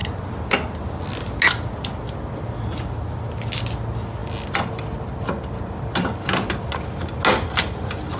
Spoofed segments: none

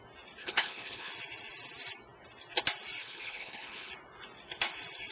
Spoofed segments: 0.4-1.1 (codec, HILCodec); 3.0-3.9

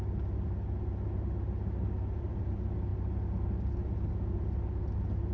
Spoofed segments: none

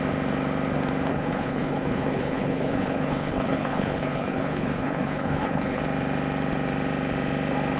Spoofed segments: 1.1-5.8 (codec, HILCodec)

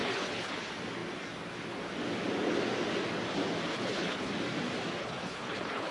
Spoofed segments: 0.0-0.6 (codec, HILCodec); 3.7-4.3; 5.0-5.9